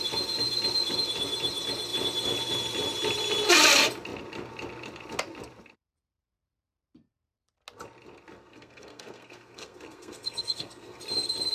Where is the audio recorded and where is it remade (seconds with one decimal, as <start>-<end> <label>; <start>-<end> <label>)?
0.0-8.4 recorded; 8.4-11.0 remade; 11.0-11.5 recorded